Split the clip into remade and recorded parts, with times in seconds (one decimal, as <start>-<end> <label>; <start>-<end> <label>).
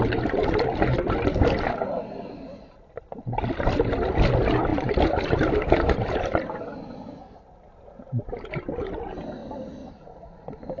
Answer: 0.0-10.8 recorded